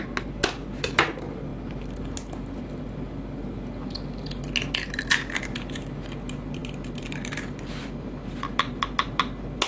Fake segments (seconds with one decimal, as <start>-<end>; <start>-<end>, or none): none